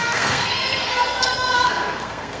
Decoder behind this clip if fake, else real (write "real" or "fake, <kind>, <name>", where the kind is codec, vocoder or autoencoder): fake, codec, SNAC